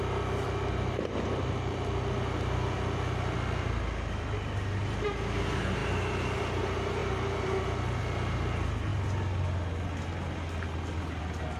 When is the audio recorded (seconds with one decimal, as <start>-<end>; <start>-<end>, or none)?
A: 0.0-11.6